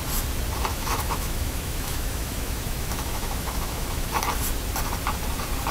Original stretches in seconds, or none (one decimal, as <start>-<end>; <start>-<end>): 0.0-0.7; 4.1-5.7